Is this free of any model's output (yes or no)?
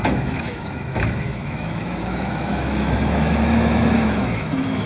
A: no